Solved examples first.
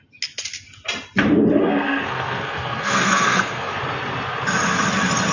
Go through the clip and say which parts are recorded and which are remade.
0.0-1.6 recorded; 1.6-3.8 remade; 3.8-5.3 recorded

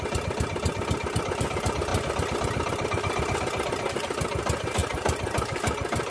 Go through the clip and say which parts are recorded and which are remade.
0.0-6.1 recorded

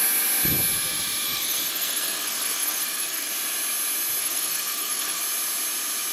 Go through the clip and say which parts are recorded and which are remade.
0.0-1.3 recorded; 1.3-3.3 remade; 3.3-4.2 recorded; 4.2-5.2 remade; 5.2-6.1 recorded

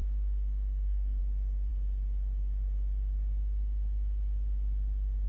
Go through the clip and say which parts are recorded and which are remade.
0.0-1.2 remade; 1.2-5.3 recorded

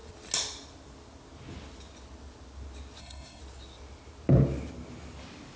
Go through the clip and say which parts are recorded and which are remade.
0.0-3.0 recorded; 3.0-3.4 remade; 3.4-5.6 recorded

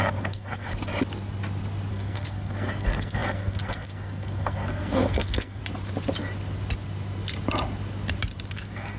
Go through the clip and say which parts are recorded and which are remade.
0.0-0.7 remade; 0.7-1.9 recorded; 1.9-5.6 remade; 5.6-8.5 recorded; 8.5-9.0 remade

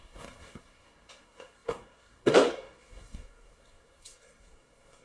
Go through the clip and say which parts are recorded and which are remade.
0.0-5.0 remade

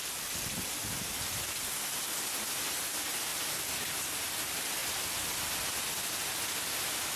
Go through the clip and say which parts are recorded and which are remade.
0.0-7.2 recorded